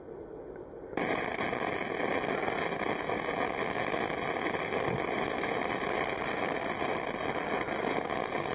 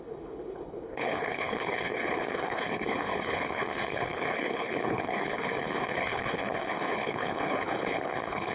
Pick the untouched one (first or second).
first